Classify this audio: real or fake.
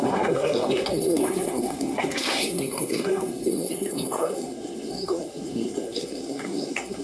fake